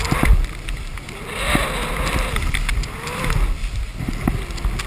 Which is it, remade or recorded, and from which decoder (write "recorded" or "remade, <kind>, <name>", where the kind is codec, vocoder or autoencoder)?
recorded